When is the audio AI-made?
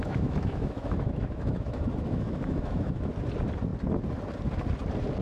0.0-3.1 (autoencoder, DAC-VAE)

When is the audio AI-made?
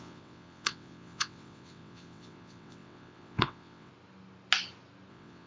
0.0-3.9 (vocoder, WaveNeXt); 5.1-5.5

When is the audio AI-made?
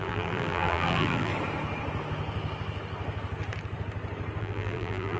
0.0-1.3 (vocoder, BigVGAN v2); 4.4-5.2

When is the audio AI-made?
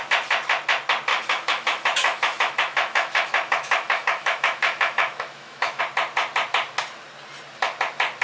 1.1-5.8 (autoencoder, DAC-VAE)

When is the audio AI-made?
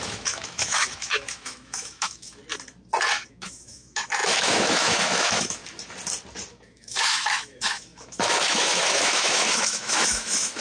0.0-2.4 (autoencoder, DAC-VAE); 3.3-5.6; 6.5-10.6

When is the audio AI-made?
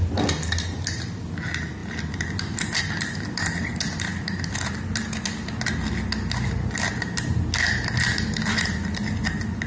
none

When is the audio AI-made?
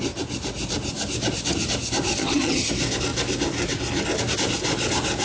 2.1-2.7 (vocoder, HiFi-GAN)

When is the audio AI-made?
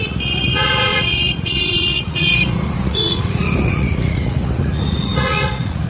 0.0-5.9 (vocoder, Vocos)